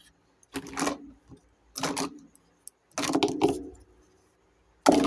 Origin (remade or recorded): recorded